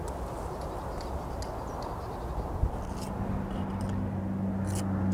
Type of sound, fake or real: real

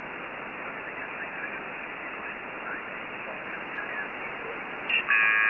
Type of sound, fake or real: real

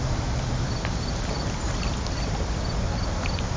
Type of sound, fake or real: real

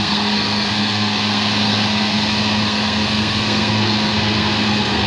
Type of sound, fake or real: fake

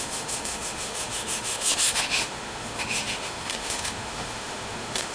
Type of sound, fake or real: fake